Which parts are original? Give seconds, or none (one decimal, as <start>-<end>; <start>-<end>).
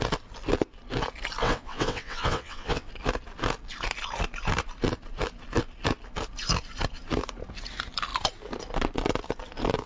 0.0-1.4; 2.9-9.9